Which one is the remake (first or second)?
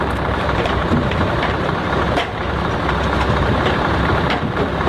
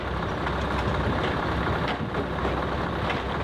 first